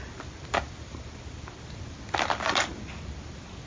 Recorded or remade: recorded